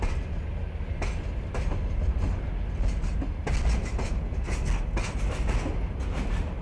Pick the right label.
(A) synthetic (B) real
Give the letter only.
B